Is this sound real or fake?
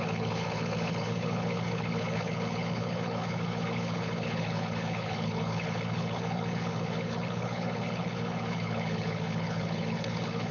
fake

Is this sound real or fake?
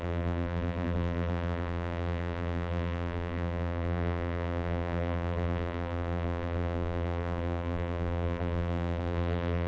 fake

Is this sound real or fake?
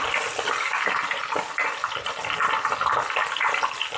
real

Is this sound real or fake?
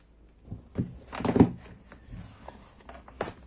real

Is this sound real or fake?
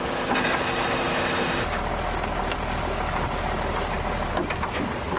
real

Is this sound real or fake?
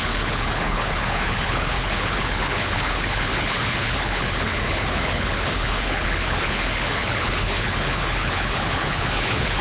fake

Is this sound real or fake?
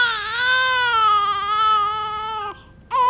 real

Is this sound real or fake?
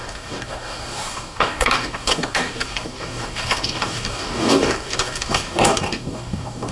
fake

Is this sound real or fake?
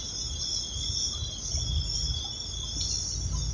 real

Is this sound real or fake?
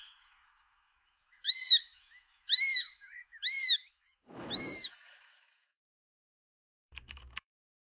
fake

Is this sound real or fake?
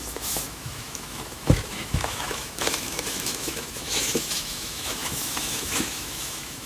fake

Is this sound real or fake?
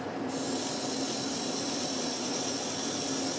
real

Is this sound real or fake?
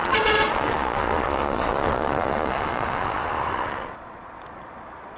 fake